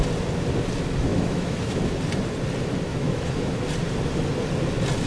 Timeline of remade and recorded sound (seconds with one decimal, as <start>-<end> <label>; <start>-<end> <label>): 0.0-1.1 recorded; 1.1-1.8 remade; 1.8-2.9 recorded; 2.9-3.6 remade; 3.6-5.1 recorded